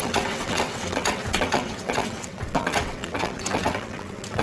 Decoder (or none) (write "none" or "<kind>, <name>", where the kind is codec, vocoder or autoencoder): vocoder, WaveNeXt